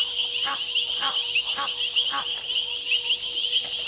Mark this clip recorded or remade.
recorded